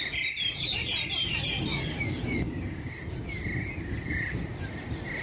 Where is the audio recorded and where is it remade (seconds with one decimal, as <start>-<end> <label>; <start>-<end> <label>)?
0.0-1.7 recorded; 1.7-2.9 remade; 2.9-5.2 recorded